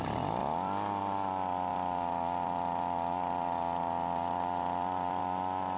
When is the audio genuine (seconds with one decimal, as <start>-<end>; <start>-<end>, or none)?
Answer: 0.0-0.4; 1.0-1.7; 5.2-5.8